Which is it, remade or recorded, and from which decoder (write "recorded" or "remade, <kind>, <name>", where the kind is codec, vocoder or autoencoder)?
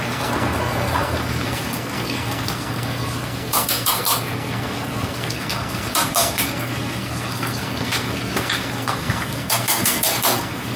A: remade, codec, SNAC